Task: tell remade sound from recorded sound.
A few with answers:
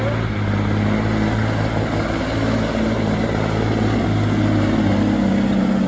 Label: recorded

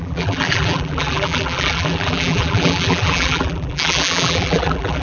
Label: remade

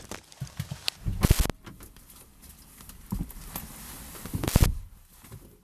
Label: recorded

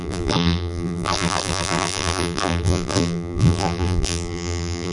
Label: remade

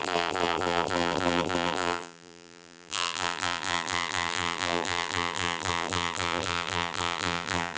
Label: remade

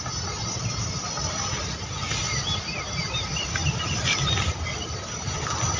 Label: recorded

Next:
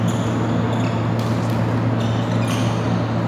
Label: recorded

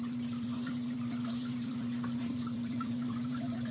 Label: remade